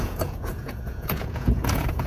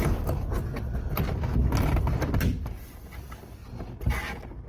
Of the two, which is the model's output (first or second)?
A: first